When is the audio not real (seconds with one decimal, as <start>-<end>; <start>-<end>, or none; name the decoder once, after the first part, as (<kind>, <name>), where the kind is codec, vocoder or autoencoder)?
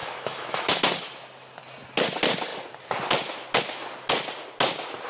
0.0-0.8 (autoencoder, DAC-VAE)